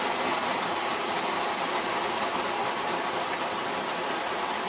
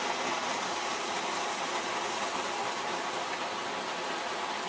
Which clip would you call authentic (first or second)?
second